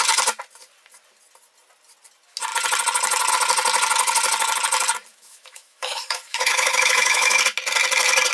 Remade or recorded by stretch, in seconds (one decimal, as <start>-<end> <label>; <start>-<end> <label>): 0.0-5.1 recorded; 5.1-7.4 remade; 7.4-8.3 recorded